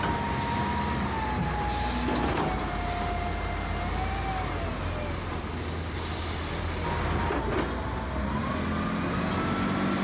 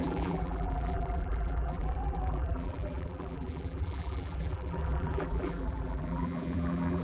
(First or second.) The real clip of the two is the first